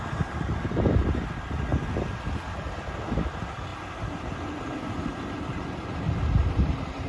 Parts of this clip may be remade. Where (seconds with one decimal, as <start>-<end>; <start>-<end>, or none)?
0.0-1.7; 2.5-3.7; 4.8-7.1